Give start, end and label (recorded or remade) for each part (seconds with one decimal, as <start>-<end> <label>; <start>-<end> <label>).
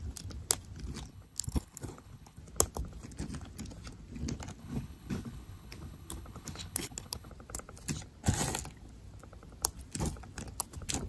0.0-1.1 recorded; 1.1-2.4 remade; 2.4-4.6 recorded; 4.6-7.3 remade; 7.3-11.1 recorded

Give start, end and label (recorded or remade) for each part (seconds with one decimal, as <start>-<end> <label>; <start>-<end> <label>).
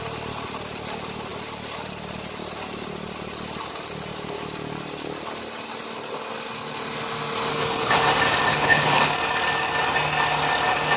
0.0-7.5 recorded; 7.5-8.0 remade; 8.0-8.5 recorded; 8.5-9.0 remade; 9.0-11.0 recorded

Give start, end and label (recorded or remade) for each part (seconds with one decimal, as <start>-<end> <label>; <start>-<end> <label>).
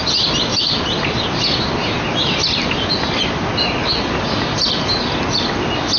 0.0-6.0 recorded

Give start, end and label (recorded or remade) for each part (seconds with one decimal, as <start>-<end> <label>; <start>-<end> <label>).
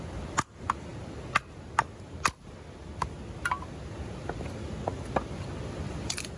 0.0-6.4 recorded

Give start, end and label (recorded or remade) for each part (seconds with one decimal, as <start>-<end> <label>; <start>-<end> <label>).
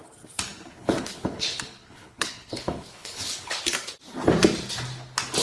0.0-0.8 recorded; 0.8-3.6 remade; 3.6-5.4 recorded